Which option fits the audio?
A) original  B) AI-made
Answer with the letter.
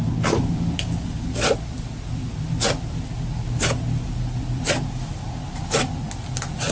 A